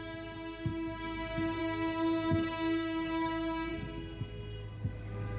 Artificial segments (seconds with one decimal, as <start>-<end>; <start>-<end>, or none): 0.0-0.7; 1.6-3.7; 4.9-5.4